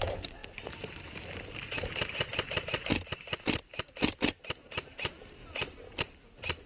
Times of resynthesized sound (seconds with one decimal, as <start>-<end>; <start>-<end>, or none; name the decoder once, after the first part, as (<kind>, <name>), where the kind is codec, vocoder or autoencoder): 0.0-5.4 (vocoder, BigVGAN v2); 6.0-6.7